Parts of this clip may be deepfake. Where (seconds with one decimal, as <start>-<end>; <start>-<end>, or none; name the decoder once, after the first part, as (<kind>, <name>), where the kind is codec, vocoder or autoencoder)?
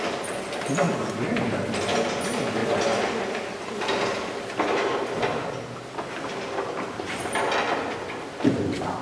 none